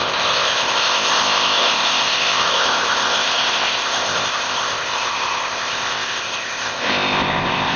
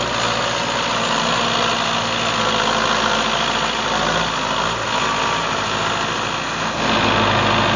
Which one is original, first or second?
second